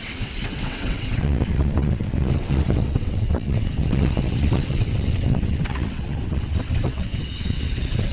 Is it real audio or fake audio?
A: fake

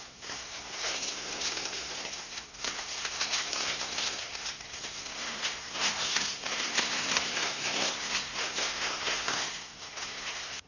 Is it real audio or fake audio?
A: fake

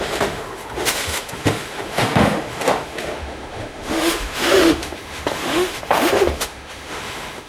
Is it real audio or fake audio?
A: fake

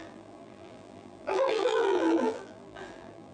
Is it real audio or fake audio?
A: fake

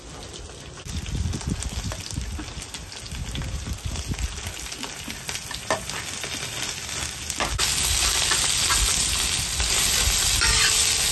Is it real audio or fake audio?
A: real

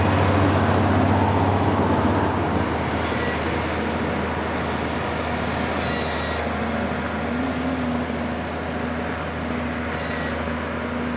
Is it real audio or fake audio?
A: real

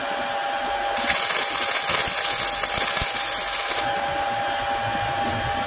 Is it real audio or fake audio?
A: real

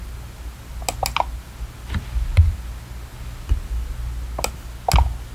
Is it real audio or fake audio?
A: real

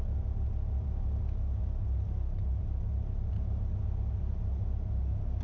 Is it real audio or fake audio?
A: real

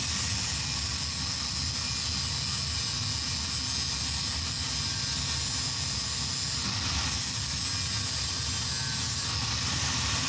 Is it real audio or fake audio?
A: real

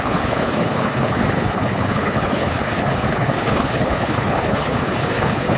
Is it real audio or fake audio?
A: fake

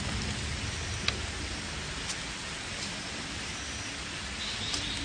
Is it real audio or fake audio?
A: real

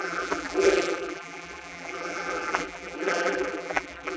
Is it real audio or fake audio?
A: fake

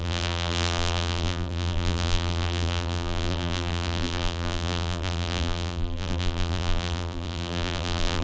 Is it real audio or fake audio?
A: fake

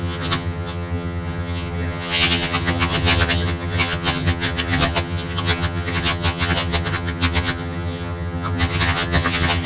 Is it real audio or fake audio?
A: fake